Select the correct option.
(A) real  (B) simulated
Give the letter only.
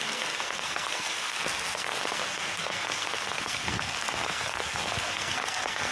B